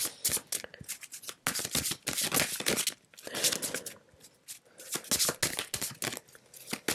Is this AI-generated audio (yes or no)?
no